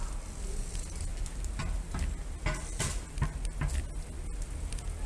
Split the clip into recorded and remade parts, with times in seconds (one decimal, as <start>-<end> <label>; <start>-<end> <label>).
0.0-5.1 recorded